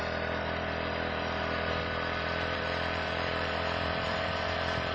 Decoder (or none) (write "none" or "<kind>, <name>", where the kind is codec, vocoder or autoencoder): vocoder, BigVGAN v2